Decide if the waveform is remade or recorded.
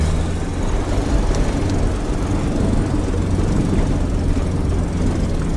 recorded